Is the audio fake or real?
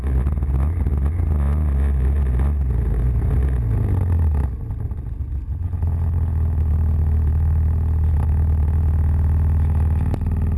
real